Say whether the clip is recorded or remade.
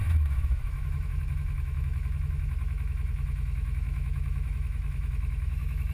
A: remade